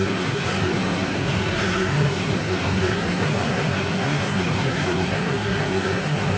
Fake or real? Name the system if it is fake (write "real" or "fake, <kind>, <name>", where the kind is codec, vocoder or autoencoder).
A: fake, codec, SNAC